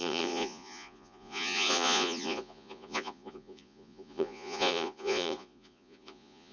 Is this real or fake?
fake